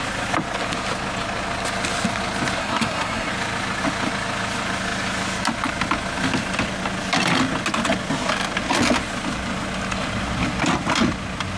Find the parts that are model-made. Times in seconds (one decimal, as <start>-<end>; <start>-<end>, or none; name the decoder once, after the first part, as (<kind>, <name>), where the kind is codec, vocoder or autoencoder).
2.6-3.3 (codec, SNAC)